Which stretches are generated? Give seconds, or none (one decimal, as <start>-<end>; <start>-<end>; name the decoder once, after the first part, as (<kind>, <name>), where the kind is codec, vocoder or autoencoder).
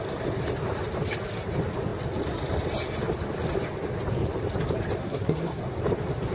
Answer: 5.0-5.6 (codec, SNAC)